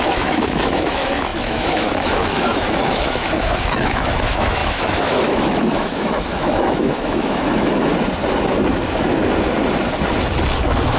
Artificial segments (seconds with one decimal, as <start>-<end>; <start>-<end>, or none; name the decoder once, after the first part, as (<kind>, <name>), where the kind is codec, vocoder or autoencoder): 0.0-7.9 (autoencoder, DAC-VAE); 10.6-11.0